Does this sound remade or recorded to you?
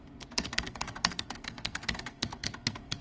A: remade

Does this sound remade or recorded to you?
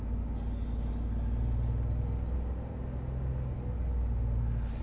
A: recorded